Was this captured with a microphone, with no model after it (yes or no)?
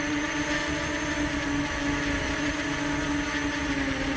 yes